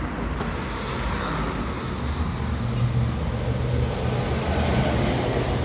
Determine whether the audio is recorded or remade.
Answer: recorded